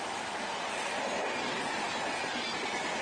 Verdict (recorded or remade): recorded